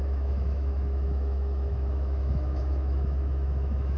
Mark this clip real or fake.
fake